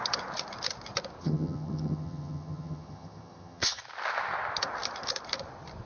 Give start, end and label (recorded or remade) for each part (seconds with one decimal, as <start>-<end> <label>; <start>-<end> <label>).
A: 0.0-1.2 recorded; 1.2-3.8 remade; 3.8-5.9 recorded